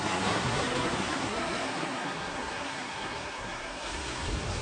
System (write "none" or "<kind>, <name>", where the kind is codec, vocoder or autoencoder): codec, SNAC